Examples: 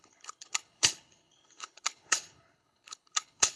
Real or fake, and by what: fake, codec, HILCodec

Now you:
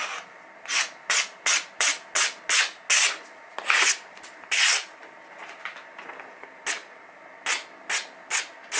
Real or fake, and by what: real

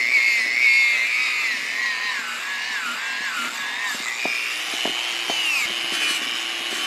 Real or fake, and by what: real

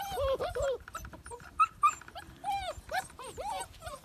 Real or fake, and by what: fake, vocoder, BigVGAN v2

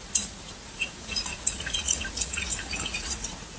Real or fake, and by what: fake, vocoder, Vocos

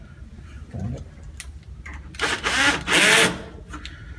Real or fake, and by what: real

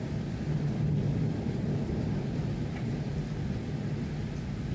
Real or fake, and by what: real